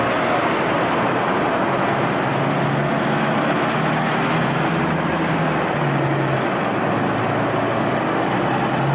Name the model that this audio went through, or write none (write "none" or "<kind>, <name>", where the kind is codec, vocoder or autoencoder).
none